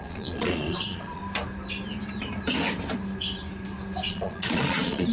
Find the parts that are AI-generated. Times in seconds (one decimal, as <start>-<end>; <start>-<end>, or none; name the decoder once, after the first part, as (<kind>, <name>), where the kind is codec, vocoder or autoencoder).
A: 0.0-1.2 (vocoder, Vocos); 4.1-5.1